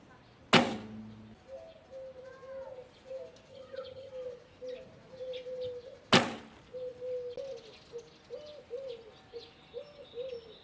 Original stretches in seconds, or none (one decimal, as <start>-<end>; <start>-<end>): 0.0-3.5; 4.1-10.6